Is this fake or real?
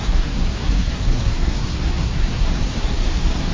fake